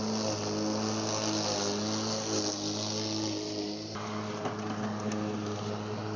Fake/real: real